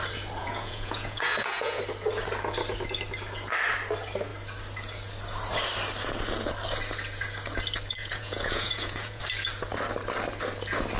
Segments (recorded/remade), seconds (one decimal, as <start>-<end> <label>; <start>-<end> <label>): 0.0-0.4 recorded; 0.4-1.8 remade; 1.8-8.0 recorded; 8.0-9.2 remade; 9.2-11.0 recorded